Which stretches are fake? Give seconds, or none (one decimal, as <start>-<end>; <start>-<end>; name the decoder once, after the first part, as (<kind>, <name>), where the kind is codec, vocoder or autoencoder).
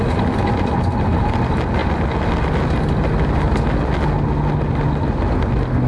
none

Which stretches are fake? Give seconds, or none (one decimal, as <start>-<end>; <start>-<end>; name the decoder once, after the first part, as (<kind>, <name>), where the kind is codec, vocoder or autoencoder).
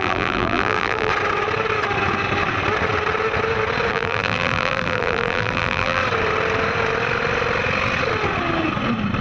0.0-1.1 (vocoder, BigVGAN v2); 3.9-6.0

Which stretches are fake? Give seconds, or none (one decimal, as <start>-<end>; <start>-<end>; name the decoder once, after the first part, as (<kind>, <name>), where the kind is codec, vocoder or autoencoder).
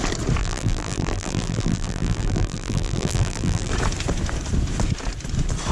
0.4-3.7 (vocoder, BigVGAN v2)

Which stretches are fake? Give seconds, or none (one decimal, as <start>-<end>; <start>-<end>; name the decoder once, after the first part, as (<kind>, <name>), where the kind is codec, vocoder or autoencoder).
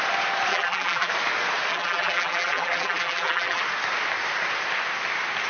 0.5-1.1 (vocoder, BigVGAN v2); 1.7-3.6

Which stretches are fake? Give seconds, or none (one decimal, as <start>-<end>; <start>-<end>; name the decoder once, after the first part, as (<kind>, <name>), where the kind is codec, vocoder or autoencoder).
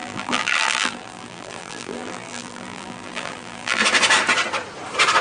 0.0-3.8 (vocoder, BigVGAN v2)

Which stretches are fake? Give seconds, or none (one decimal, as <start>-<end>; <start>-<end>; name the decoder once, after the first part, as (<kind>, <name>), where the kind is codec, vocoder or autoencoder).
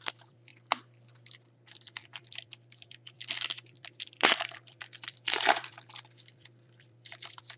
0.0-7.6 (vocoder, BigVGAN v2)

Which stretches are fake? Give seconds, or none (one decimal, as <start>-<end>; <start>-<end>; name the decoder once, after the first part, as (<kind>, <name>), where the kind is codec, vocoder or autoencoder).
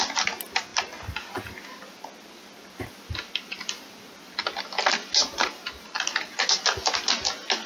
5.2-6.4 (vocoder, BigVGAN v2)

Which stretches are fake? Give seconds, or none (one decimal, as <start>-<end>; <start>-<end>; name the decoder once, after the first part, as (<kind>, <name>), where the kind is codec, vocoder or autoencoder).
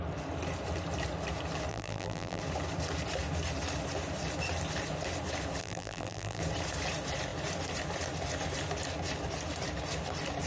1.7-2.4 (vocoder, BigVGAN v2); 5.6-6.4